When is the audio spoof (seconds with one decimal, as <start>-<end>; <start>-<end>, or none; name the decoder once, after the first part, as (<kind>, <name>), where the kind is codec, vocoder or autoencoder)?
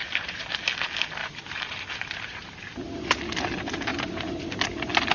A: 0.0-0.5 (vocoder, BigVGAN v2); 1.2-2.6; 3.9-4.6